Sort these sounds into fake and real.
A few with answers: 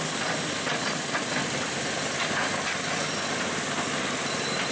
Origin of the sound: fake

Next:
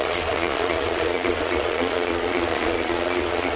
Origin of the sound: fake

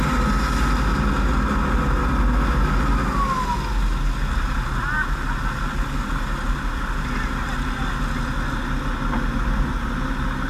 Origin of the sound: real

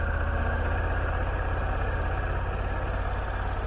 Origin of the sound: real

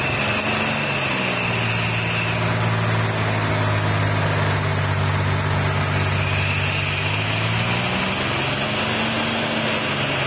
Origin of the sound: real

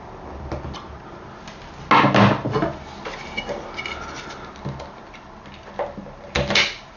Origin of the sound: real